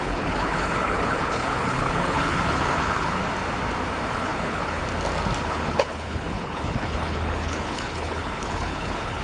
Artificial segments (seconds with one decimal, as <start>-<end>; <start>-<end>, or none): 0.0-3.2; 4.1-4.8; 5.4-9.2